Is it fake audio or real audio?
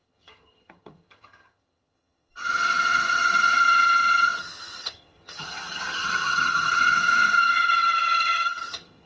fake